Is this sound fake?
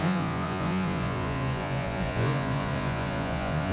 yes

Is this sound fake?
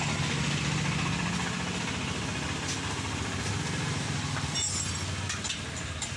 no